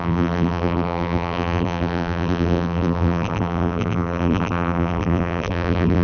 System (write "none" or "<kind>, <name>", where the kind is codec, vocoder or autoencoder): vocoder, BigVGAN v2